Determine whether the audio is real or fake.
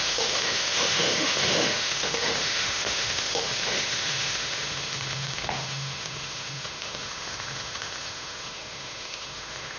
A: fake